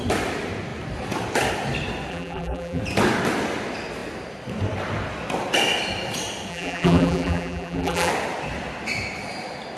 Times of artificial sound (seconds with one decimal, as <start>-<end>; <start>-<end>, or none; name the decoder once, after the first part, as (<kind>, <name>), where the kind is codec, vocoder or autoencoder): 2.1-2.8 (vocoder, BigVGAN v2); 6.5-8.1